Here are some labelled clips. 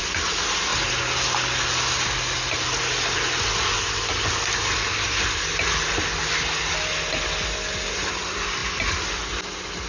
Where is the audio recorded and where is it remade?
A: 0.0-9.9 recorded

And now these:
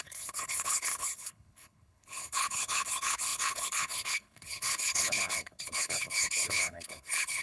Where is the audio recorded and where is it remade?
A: 0.0-7.4 remade

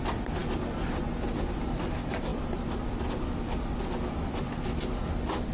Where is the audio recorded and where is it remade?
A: 0.0-5.5 recorded

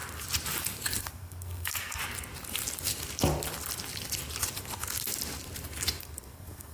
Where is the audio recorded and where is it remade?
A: 0.0-1.0 recorded; 1.0-2.0 remade; 2.0-6.0 recorded; 6.0-6.7 remade